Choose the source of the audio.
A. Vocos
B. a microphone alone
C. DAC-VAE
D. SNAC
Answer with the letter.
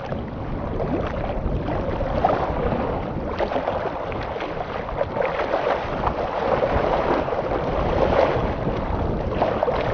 B